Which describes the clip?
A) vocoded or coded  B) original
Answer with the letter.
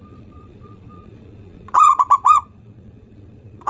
A